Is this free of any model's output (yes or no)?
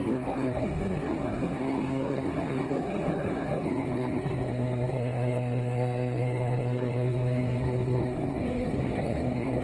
no